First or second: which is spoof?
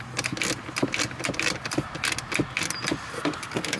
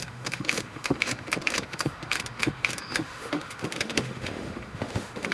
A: second